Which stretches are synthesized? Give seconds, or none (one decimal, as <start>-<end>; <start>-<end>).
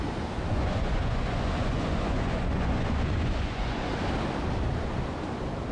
0.5-3.9